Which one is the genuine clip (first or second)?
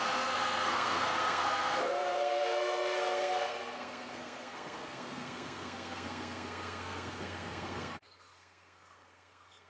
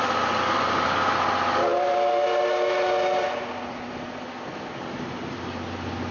second